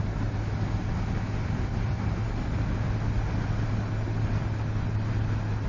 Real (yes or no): yes